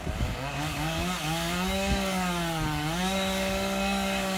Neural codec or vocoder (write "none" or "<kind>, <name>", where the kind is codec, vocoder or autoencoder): codec, DAC